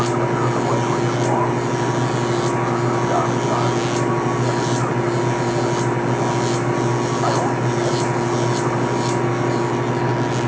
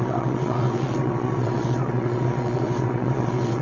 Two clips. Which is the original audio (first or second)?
first